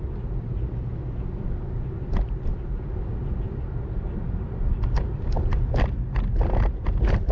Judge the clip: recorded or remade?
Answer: recorded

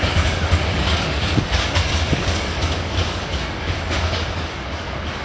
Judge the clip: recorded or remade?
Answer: remade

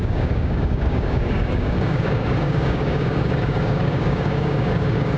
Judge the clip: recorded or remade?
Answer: remade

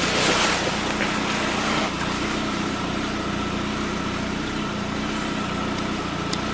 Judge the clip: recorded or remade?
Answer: recorded